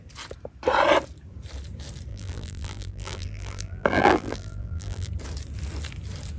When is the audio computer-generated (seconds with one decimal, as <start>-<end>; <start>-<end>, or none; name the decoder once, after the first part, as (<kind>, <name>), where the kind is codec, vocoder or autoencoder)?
2.1-5.1 (vocoder, BigVGAN v2)

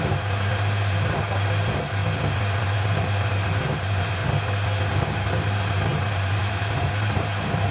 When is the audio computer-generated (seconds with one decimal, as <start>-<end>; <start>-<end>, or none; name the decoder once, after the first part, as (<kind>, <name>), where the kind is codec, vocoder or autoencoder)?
0.0-2.0 (vocoder, BigVGAN v2); 2.6-4.2; 4.9-7.7

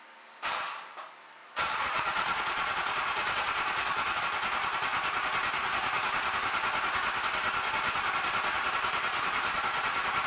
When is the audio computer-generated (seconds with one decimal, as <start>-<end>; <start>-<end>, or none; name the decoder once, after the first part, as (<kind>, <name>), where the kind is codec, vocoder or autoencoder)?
1.4-4.2 (vocoder, Vocos)